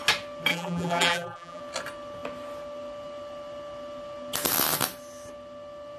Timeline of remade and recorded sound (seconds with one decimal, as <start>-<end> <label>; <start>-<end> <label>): 0.0-0.5 recorded; 0.5-1.6 remade; 1.6-6.0 recorded